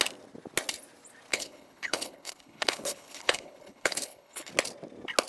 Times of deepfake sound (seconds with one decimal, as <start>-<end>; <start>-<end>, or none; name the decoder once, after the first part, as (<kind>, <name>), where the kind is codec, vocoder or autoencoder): 1.3-4.5 (codec, HILCodec)